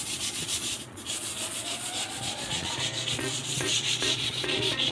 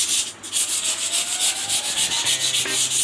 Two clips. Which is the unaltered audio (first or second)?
second